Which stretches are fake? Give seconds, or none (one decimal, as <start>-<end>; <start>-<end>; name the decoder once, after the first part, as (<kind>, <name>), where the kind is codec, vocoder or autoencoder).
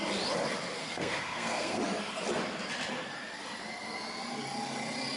0.8-1.8 (codec, SNAC)